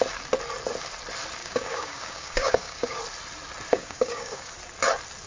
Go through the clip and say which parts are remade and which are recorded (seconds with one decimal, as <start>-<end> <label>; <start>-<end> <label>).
0.0-1.4 recorded; 1.4-3.0 remade; 3.0-3.7 recorded; 3.7-4.5 remade; 4.5-5.3 recorded